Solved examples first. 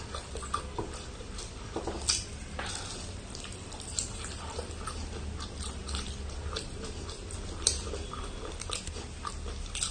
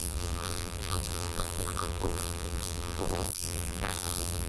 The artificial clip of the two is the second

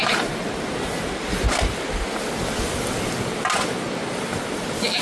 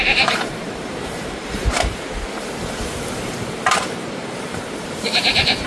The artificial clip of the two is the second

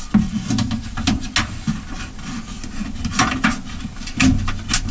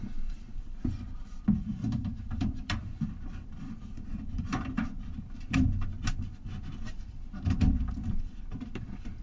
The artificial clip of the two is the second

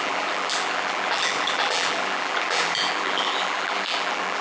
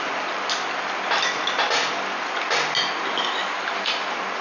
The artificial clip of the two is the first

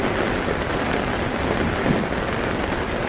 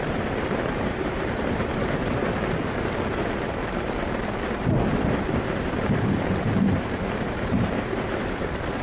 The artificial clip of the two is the second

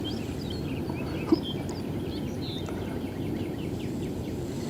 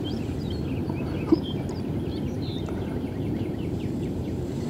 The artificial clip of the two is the second